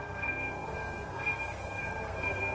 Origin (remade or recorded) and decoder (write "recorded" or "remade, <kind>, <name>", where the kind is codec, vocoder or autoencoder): remade, codec, SNAC